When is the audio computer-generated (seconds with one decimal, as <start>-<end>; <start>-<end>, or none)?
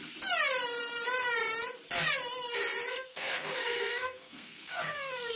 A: 2.9-5.4